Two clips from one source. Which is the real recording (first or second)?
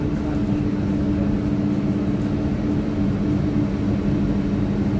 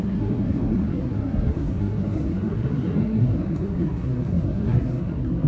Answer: first